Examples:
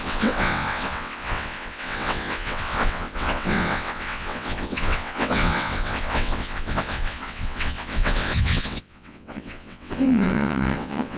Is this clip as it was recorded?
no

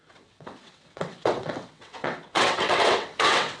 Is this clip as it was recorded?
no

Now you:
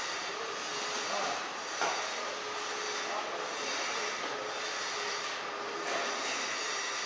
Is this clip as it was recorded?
yes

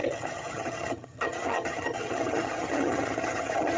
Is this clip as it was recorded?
no